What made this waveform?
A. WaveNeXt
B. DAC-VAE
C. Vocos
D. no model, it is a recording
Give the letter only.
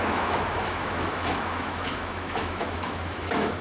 B